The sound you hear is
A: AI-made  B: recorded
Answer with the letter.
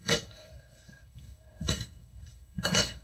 A